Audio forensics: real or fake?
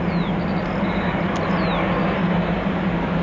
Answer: real